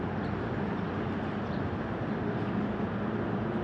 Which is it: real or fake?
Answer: real